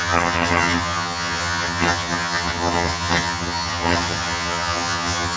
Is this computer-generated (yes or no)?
yes